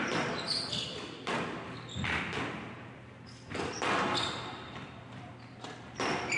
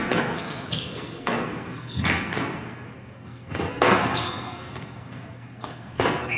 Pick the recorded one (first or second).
first